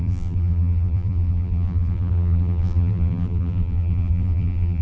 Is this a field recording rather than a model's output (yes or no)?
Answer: no